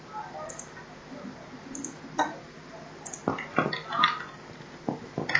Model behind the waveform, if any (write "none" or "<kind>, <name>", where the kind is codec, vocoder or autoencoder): none